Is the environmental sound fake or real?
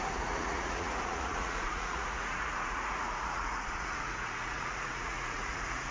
fake